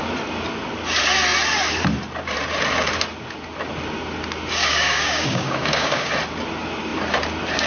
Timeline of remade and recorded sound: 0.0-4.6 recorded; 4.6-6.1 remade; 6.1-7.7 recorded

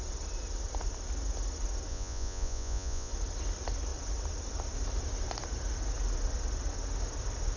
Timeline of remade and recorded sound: 0.0-1.9 recorded; 1.9-3.1 remade; 3.1-7.6 recorded

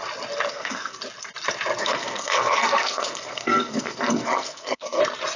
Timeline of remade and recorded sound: 0.0-0.5 recorded; 0.5-1.0 remade; 1.0-1.8 recorded; 1.8-5.0 remade; 5.0-5.4 recorded